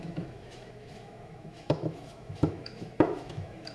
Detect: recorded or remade remade